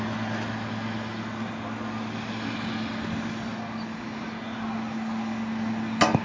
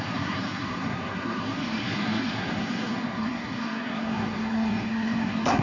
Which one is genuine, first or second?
first